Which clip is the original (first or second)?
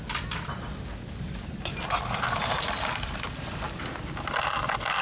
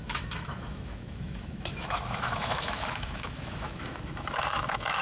first